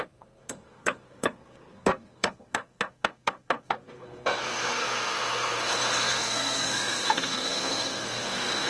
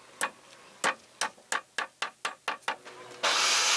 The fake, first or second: first